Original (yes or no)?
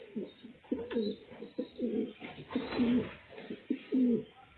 yes